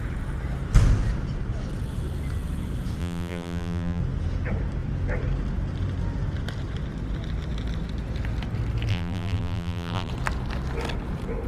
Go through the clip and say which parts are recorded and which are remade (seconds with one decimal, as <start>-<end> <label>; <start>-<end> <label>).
0.0-3.0 recorded; 3.0-4.0 remade; 4.0-8.9 recorded; 8.9-10.1 remade; 10.1-11.5 recorded